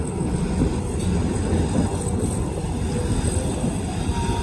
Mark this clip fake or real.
real